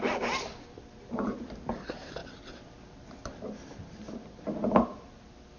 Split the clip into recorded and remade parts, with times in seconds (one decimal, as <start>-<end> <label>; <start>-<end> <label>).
0.0-5.6 recorded